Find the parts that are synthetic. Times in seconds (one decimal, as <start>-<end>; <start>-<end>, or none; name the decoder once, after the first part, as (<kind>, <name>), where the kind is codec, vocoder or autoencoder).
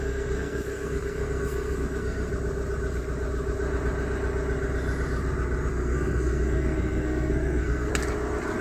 0.0-2.3 (codec, SNAC); 5.7-7.9